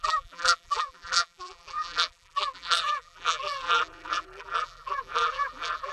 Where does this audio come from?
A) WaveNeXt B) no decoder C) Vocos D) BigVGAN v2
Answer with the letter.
D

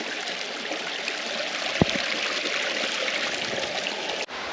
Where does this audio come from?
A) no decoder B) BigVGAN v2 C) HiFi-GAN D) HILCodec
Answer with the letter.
A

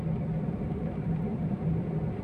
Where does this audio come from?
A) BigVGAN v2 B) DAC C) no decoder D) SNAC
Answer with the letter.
A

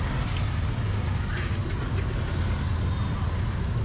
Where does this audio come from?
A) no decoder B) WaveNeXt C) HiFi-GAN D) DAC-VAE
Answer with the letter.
A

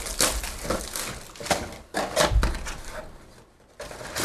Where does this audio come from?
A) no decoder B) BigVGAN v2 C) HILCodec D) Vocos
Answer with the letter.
A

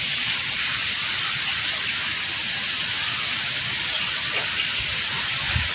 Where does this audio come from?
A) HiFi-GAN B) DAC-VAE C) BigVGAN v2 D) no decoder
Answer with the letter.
D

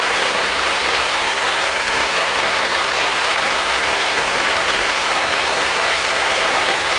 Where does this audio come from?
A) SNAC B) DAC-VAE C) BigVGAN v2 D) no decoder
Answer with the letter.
A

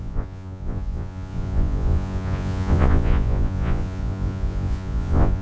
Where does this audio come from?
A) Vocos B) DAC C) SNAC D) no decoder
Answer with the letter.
A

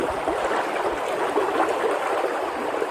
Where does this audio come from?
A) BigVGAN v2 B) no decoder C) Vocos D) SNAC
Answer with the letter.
B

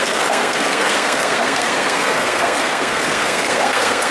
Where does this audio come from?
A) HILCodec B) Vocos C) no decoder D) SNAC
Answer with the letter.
D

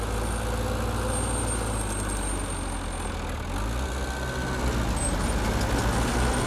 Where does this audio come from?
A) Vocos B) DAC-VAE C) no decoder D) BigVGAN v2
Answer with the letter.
C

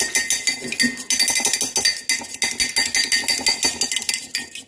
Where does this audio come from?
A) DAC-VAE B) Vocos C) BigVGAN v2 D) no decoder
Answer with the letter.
D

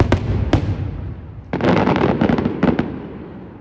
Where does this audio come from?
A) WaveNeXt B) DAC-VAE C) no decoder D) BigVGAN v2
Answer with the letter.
C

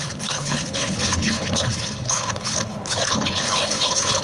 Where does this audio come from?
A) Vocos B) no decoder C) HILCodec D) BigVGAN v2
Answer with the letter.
C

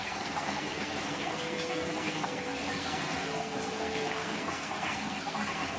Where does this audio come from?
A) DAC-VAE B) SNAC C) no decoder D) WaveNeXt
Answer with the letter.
B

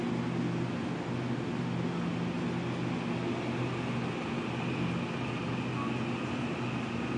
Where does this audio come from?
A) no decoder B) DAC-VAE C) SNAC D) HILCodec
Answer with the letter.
A